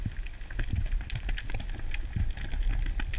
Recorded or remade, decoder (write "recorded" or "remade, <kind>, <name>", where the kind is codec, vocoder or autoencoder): recorded